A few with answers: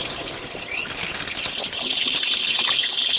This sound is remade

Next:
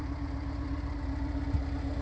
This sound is recorded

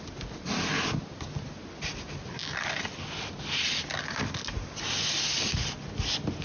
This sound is recorded